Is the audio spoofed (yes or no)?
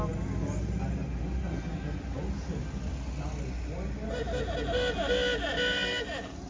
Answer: no